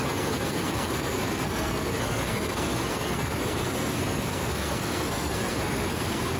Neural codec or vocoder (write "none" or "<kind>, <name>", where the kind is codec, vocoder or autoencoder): codec, SNAC